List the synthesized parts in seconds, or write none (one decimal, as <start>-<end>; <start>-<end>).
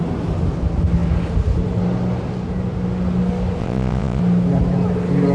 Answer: 3.6-4.2